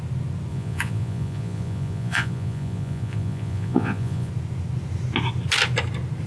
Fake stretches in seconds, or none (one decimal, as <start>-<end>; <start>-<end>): 0.5-4.3